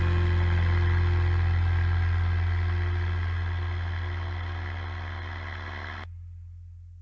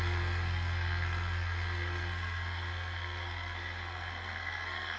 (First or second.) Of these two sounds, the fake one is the second